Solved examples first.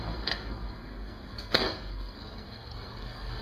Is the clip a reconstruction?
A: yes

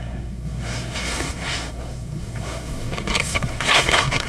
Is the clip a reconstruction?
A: yes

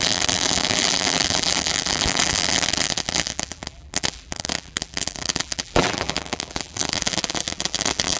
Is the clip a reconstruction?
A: yes